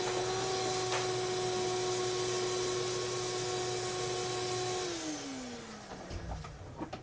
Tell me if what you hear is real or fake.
real